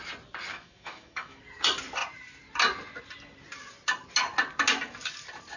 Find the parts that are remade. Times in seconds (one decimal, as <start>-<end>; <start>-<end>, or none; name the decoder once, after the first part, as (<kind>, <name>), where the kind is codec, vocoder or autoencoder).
0.5-1.4 (autoencoder, DAC-VAE)